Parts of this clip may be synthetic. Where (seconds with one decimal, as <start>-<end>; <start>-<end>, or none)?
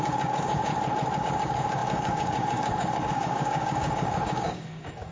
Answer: 0.0-0.7; 1.2-5.1